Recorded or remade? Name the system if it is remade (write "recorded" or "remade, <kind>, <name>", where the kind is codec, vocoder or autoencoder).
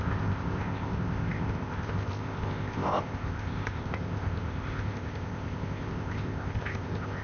remade, codec, ZipCodec